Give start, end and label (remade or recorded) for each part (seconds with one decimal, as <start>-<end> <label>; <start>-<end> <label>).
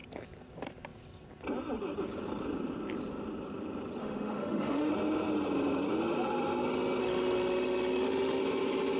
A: 0.0-4.0 recorded; 4.0-4.9 remade; 4.9-7.0 recorded; 7.0-8.4 remade; 8.4-9.0 recorded